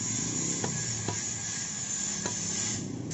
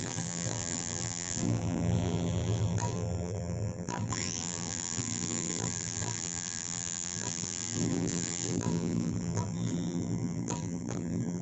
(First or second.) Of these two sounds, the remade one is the second